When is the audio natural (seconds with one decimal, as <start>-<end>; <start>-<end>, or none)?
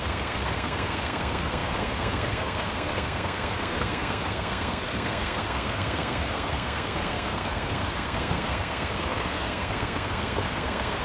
none